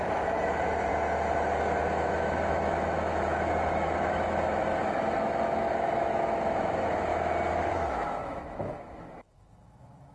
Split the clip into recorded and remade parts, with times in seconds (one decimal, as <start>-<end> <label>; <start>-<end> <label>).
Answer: 0.0-0.9 remade; 0.9-2.1 recorded; 2.1-7.1 remade; 7.1-7.6 recorded; 7.6-10.1 remade